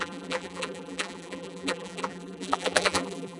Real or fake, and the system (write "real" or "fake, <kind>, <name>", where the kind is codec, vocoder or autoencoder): fake, vocoder, BigVGAN v2